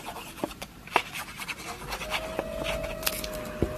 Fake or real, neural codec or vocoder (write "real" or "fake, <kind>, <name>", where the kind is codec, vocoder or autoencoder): real